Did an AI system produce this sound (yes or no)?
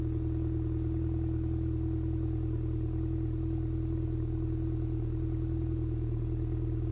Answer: no